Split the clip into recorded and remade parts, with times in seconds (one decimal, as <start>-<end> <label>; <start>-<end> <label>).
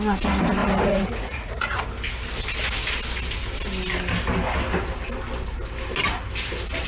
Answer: 0.0-0.6 recorded; 0.6-1.8 remade; 1.8-6.9 recorded